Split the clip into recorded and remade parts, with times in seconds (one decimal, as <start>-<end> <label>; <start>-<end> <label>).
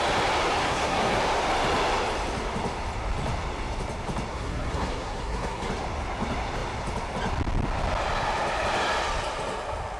0.0-0.6 recorded; 0.6-1.2 remade; 1.2-4.3 recorded; 4.3-5.7 remade; 5.7-10.0 recorded